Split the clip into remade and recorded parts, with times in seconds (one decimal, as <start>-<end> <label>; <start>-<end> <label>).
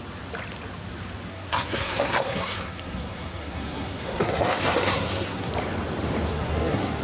0.0-1.3 recorded; 1.3-5.5 remade; 5.5-6.3 recorded; 6.3-7.0 remade